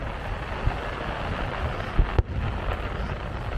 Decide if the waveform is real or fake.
real